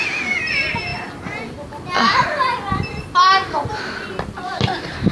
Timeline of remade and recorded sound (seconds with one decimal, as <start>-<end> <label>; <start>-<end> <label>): 0.0-5.1 recorded